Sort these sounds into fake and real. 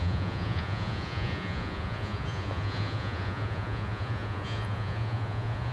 fake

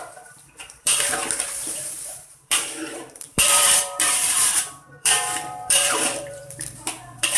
fake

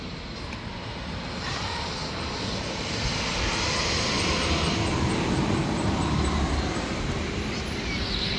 real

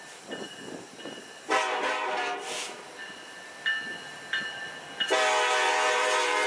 real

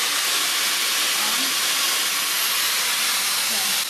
real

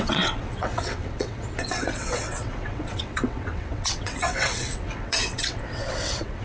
fake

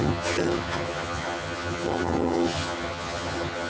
fake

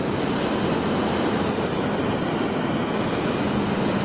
real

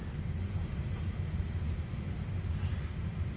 real